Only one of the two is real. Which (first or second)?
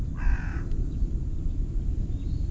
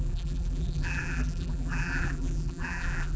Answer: first